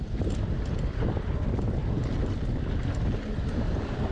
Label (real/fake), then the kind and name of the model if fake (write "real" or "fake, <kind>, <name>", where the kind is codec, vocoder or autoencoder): real